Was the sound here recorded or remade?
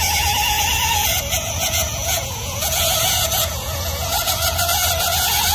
remade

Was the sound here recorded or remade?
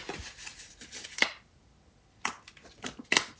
recorded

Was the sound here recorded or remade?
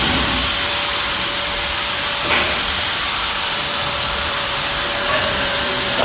remade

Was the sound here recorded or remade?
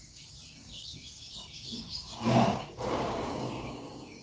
remade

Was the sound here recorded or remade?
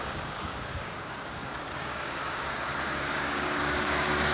remade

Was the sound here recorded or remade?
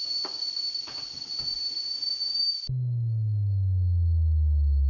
recorded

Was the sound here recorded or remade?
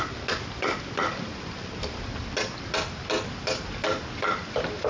recorded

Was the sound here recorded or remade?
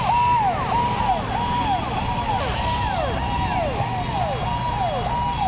recorded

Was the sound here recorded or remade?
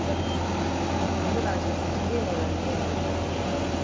recorded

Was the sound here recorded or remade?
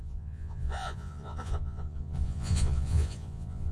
remade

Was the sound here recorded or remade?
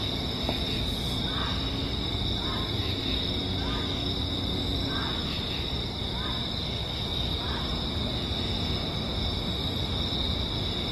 recorded